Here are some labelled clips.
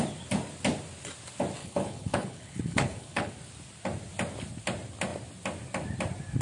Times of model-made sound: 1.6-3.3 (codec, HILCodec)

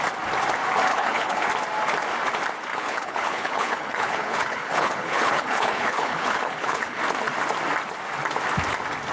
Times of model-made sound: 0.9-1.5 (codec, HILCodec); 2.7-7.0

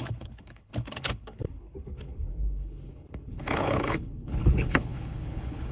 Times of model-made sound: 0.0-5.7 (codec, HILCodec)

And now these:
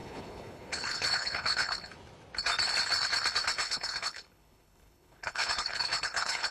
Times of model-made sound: 0.0-1.9 (codec, HILCodec); 3.6-6.5

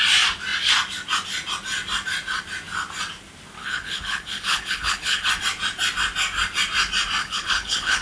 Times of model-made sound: 3.6-5.3 (codec, HILCodec); 7.2-8.0

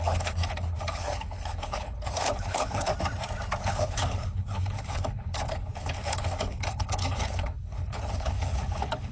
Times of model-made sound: 0.0-2.9 (codec, HILCodec); 3.6-9.1

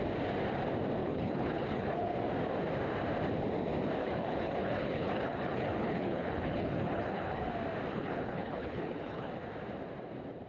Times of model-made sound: 1.0-2.2 (codec, HILCodec); 4.0-7.5; 7.9-9.3

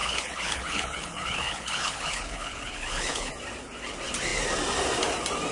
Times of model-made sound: 0.0-3.3 (codec, HILCodec)